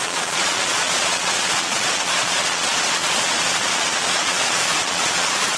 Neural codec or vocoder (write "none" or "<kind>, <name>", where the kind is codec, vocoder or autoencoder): vocoder, Vocos